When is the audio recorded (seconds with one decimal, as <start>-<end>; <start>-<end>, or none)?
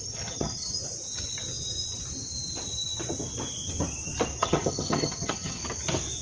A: 0.8-4.4; 5.6-6.2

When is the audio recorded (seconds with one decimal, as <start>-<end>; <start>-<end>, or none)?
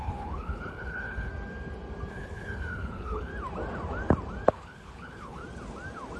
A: 1.3-2.1; 3.3-4.5; 5.4-6.2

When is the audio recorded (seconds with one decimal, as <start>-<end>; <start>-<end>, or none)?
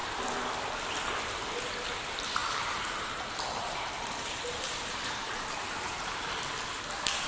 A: 0.0-2.4; 6.4-7.3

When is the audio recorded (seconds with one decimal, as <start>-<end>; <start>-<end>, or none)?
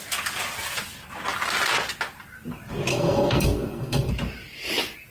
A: 0.0-2.9; 4.1-5.1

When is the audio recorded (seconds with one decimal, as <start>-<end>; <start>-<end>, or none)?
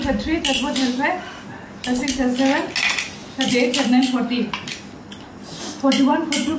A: 0.0-6.6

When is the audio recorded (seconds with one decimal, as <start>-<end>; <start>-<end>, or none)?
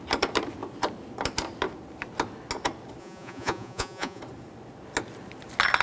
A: 0.0-3.0; 4.2-5.8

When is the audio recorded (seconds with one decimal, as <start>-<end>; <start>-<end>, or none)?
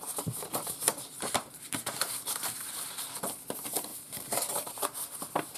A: 2.9-3.9